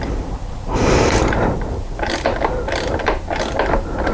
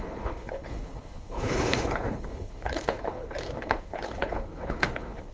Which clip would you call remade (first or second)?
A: second